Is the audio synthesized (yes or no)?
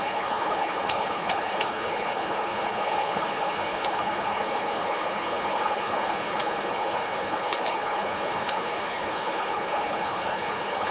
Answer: yes